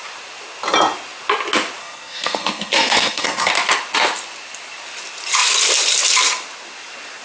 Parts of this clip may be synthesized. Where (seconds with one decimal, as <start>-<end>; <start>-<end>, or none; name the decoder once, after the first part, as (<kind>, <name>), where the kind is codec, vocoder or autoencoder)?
1.8-3.5 (codec, SNAC)